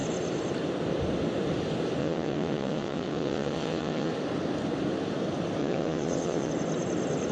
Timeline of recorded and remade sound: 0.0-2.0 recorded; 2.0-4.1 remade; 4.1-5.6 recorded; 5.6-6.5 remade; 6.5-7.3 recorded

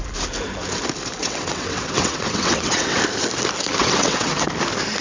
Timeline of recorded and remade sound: 0.0-1.2 recorded; 1.2-3.0 remade; 3.0-3.8 recorded; 3.8-4.5 remade; 4.5-5.0 recorded

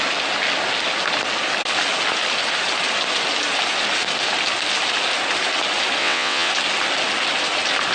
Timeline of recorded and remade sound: 0.0-6.0 recorded; 6.0-6.5 remade; 6.5-7.9 recorded

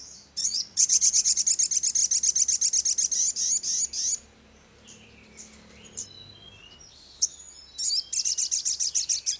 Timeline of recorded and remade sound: 0.0-0.4 recorded; 0.4-1.4 remade; 1.4-9.4 recorded

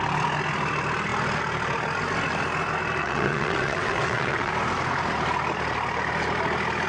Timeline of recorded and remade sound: 0.0-3.0 recorded; 3.0-4.5 remade; 4.5-6.9 recorded